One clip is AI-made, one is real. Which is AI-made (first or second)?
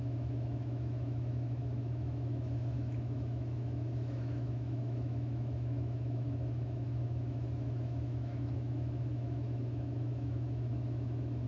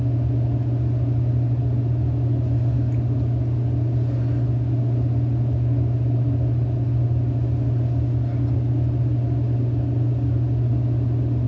first